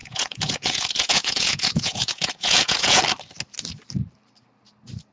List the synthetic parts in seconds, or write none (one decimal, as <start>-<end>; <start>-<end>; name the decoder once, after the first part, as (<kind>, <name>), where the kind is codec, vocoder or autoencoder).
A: 0.0-3.0 (vocoder, Vocos)